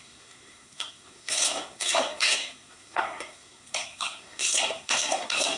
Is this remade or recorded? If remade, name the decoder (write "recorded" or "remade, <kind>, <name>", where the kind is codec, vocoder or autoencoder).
remade, codec, SNAC